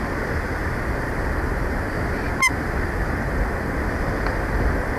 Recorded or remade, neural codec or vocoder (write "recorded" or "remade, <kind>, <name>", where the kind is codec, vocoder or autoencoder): recorded